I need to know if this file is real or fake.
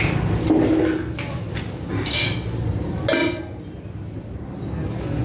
real